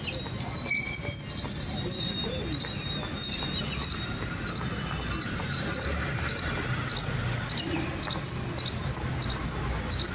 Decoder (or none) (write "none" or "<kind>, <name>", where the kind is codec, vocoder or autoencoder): none